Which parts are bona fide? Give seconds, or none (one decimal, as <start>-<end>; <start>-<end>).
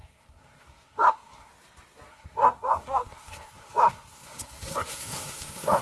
1.5-2.1